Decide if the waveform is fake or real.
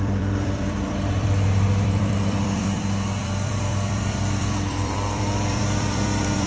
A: fake